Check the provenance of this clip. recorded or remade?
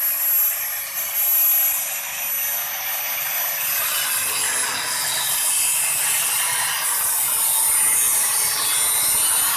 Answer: recorded